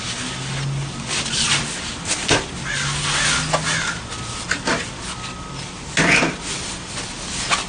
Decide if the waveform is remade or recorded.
recorded